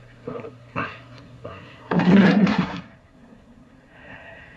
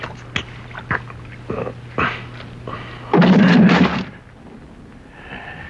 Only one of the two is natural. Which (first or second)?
second